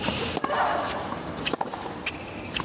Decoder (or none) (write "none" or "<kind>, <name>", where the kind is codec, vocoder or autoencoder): none